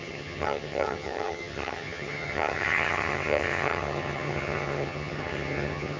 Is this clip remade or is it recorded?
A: remade